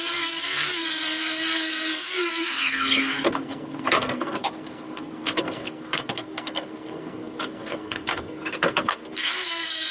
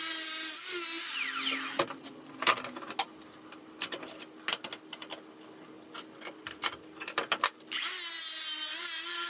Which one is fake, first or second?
first